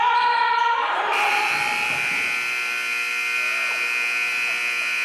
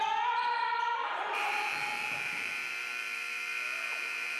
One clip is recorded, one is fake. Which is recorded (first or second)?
first